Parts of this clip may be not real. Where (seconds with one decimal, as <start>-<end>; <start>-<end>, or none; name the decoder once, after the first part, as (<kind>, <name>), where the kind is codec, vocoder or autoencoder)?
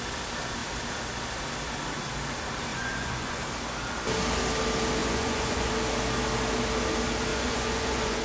2.7-3.4 (vocoder, Vocos); 5.0-5.7; 7.3-8.2